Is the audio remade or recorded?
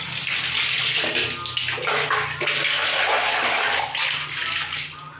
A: recorded